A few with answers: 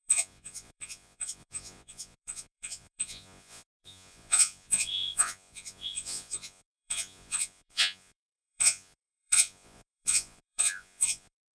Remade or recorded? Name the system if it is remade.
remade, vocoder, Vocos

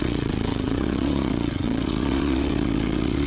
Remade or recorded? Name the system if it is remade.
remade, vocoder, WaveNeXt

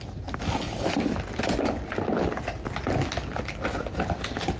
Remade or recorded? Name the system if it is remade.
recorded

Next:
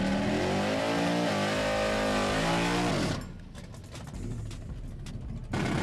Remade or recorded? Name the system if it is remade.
recorded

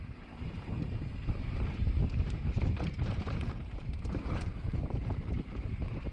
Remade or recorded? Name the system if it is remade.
remade, vocoder, BigVGAN v2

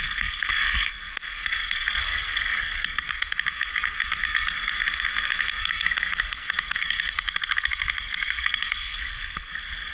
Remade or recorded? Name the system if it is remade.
remade, codec, SNAC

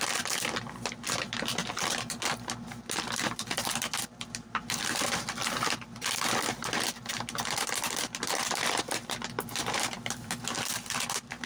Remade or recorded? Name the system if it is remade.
remade, vocoder, BigVGAN v2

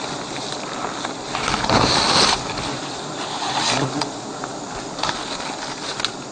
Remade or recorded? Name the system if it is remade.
recorded